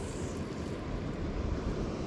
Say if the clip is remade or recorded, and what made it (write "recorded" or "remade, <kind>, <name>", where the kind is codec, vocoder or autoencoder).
recorded